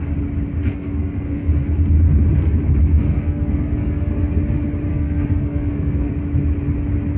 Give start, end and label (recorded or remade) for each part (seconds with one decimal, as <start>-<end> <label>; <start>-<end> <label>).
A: 0.0-0.6 recorded; 0.6-1.5 remade; 1.5-2.9 recorded; 2.9-4.1 remade; 4.1-4.9 recorded; 4.9-6.1 remade; 6.1-7.2 recorded